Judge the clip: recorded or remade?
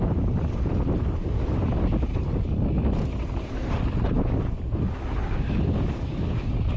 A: recorded